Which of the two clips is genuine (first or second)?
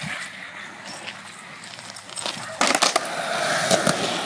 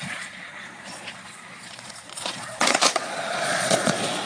first